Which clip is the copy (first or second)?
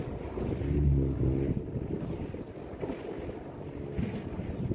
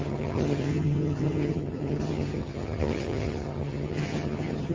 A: second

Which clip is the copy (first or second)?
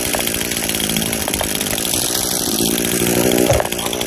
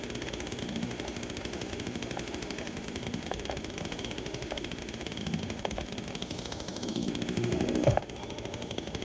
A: second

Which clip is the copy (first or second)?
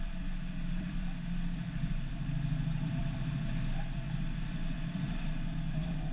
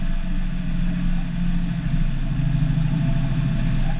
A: first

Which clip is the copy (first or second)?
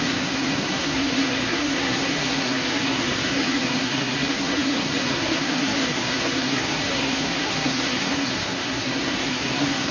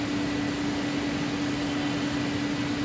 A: first